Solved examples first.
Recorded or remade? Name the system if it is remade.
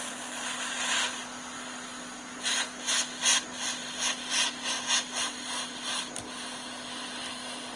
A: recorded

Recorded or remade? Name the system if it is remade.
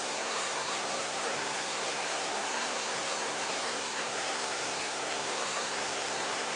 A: remade, codec, SNAC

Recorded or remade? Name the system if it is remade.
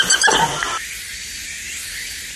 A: recorded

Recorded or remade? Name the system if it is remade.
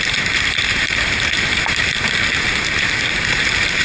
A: remade, vocoder, BigVGAN v2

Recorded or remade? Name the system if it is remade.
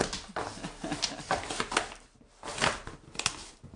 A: recorded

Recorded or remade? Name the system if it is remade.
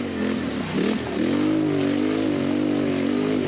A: recorded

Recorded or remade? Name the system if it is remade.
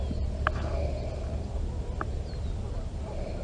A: recorded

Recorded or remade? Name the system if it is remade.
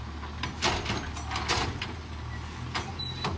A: recorded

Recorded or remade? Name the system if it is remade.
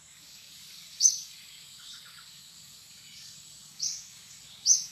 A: remade, codec, DAC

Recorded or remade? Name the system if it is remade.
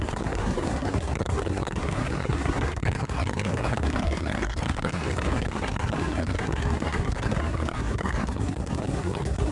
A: remade, codec, SNAC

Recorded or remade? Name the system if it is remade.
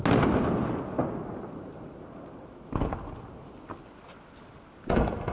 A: recorded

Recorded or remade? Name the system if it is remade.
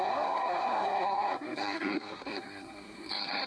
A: remade, codec, SNAC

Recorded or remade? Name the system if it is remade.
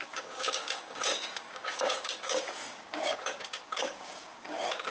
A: remade, codec, DAC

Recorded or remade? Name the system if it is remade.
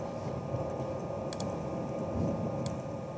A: recorded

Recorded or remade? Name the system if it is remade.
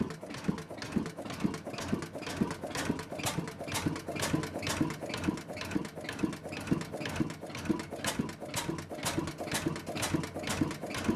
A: recorded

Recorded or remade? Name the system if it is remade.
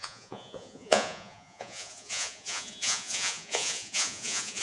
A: remade, vocoder, Vocos